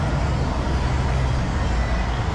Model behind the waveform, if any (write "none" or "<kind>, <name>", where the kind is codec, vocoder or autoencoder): none